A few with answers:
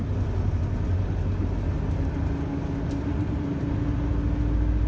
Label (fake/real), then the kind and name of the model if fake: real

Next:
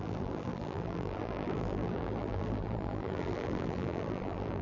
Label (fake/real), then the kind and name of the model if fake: fake, vocoder, BigVGAN v2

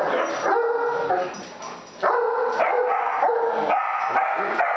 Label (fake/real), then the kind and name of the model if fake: real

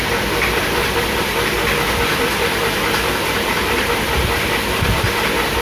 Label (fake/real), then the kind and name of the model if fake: fake, vocoder, BigVGAN v2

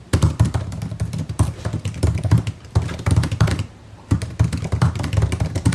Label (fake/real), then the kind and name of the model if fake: fake, vocoder, BigVGAN v2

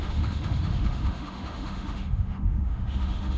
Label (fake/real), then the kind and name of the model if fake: fake, autoencoder, DAC-VAE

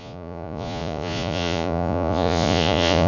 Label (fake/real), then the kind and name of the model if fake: fake, vocoder, Vocos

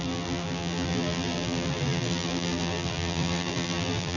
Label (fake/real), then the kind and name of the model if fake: fake, vocoder, BigVGAN v2